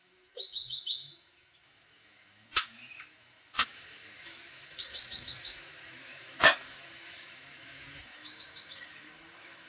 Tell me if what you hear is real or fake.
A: fake